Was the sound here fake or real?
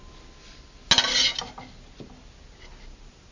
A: real